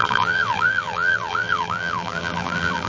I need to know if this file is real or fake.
fake